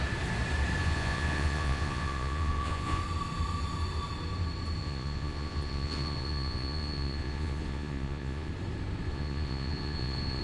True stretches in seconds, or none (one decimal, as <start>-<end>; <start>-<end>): 0.0-0.8; 3.0-4.8; 8.5-9.1